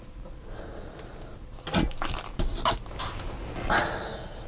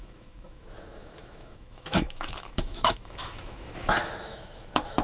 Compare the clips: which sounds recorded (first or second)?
first